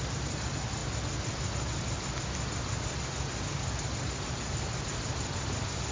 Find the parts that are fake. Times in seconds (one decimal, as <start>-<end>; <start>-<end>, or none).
none